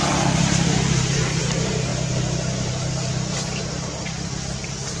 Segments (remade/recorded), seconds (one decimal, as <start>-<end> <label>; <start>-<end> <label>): 0.0-1.4 remade; 1.4-5.0 recorded